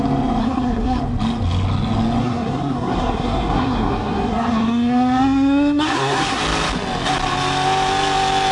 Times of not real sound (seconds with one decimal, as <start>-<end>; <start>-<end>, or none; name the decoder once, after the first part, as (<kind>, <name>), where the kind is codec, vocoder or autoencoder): 0.4-1.0 (codec, SNAC); 2.2-6.4